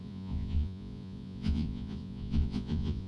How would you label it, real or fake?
fake